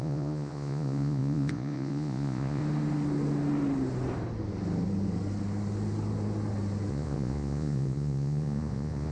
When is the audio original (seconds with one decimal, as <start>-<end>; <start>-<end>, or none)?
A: 2.6-6.9